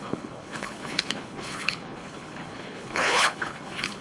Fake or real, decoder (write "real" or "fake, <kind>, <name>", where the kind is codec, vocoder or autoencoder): fake, codec, HILCodec